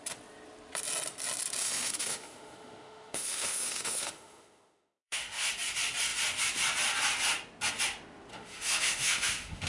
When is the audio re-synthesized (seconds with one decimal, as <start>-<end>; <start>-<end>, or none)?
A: 1.6-5.5; 8.3-9.7